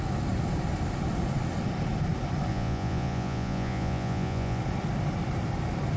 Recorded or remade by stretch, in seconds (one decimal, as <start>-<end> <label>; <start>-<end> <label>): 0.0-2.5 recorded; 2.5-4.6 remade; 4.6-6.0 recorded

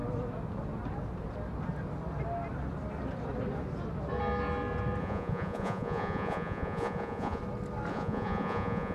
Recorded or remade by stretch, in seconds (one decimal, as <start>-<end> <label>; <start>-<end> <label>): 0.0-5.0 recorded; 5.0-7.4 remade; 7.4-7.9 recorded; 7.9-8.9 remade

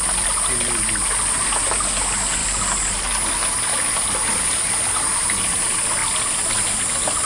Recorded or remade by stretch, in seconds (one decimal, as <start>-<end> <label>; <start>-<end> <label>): 0.0-7.3 recorded

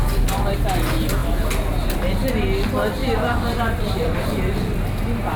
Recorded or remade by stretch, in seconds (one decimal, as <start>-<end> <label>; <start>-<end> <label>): 0.0-3.0 recorded; 3.0-4.4 remade; 4.4-5.4 recorded